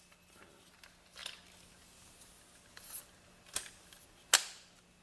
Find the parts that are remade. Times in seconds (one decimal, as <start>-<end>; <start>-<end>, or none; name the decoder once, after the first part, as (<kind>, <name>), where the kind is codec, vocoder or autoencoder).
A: none